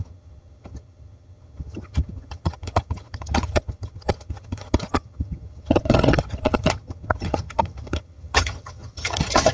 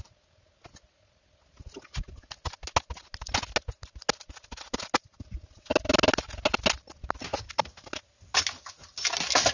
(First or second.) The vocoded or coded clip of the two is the first